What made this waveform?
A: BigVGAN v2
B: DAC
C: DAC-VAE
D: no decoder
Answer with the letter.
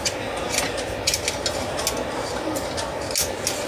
D